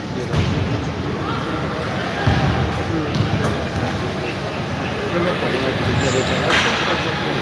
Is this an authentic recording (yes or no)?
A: yes